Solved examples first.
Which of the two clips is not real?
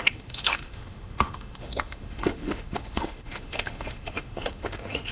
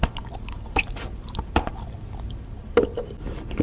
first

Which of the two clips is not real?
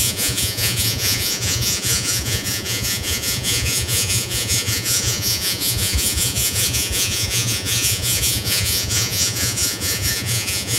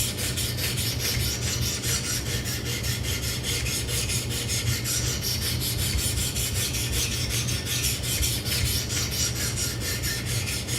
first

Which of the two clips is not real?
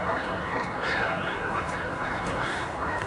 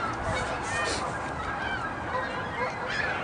first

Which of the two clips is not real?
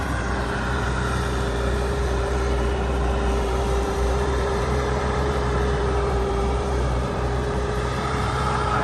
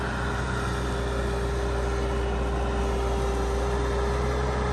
first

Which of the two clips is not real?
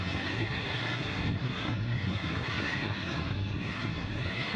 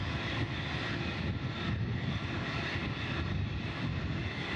first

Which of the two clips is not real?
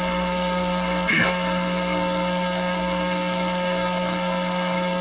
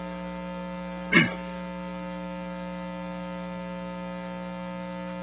first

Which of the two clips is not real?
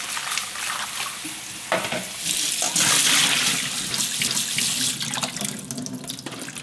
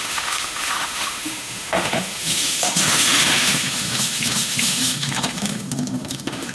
second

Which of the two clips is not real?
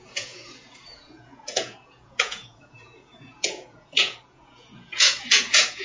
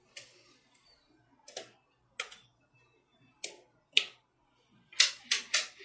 first